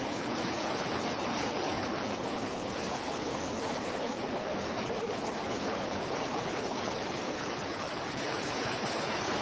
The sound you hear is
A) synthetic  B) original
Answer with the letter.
A